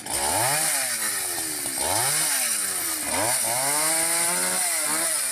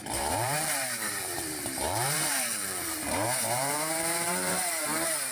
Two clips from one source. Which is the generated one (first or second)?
second